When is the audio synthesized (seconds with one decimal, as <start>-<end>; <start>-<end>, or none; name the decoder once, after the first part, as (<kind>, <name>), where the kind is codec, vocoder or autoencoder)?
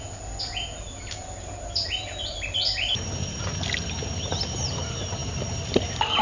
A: none